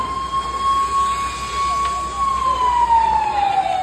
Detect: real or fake real